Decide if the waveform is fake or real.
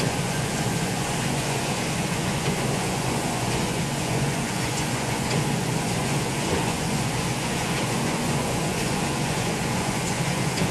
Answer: fake